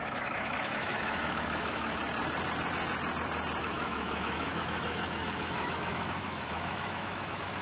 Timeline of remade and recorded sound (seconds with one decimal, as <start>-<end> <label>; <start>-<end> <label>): 0.0-2.0 remade; 2.0-3.6 recorded; 3.6-7.6 remade